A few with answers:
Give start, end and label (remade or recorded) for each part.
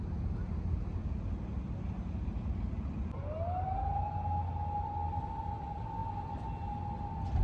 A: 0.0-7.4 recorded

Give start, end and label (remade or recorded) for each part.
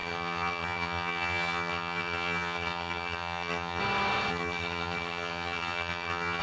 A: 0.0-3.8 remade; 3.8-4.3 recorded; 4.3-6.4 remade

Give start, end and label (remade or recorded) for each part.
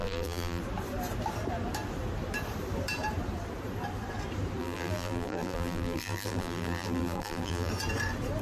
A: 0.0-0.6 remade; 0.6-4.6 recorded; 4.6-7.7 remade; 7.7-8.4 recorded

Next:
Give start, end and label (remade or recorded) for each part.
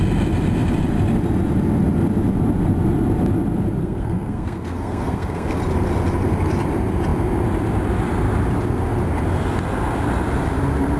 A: 0.0-3.8 recorded; 3.8-5.6 remade; 5.6-11.0 recorded